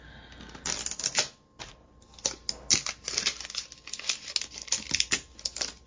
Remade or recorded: recorded